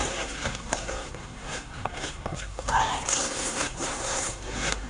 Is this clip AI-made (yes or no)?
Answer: yes